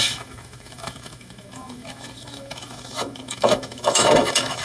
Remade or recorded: remade